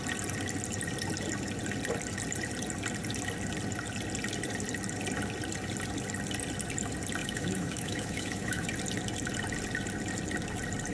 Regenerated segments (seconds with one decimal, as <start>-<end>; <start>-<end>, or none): 7.2-8.7